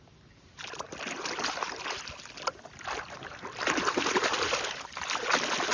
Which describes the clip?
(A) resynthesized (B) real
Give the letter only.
B